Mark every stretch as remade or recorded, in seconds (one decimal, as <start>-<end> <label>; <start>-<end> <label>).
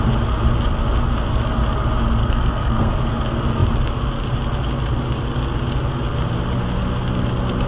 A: 0.0-2.2 recorded; 2.2-2.9 remade; 2.9-7.7 recorded